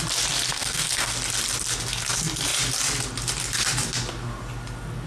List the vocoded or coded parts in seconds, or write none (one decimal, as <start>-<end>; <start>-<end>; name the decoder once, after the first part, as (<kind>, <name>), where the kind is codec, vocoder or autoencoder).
0.5-1.1 (codec, SNAC)